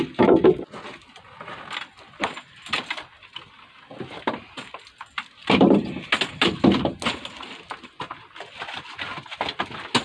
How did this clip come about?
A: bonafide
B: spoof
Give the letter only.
A